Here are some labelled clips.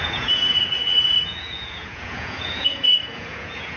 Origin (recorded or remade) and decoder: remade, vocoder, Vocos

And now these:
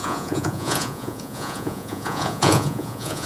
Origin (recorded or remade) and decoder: remade, vocoder, Vocos